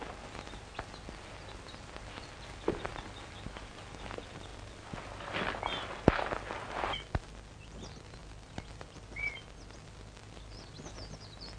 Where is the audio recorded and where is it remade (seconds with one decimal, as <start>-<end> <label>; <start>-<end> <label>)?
0.0-11.6 recorded